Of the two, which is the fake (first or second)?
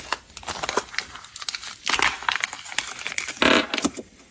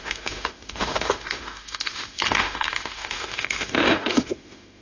second